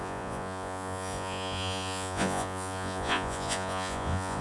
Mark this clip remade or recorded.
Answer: remade